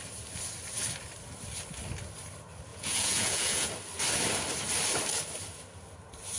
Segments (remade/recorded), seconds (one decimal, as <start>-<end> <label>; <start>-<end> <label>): 0.0-2.7 recorded; 2.7-3.7 remade; 3.7-6.4 recorded